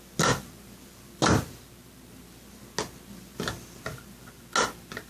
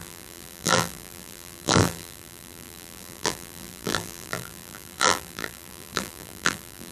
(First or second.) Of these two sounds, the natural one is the first